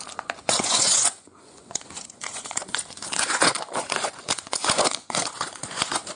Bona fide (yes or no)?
no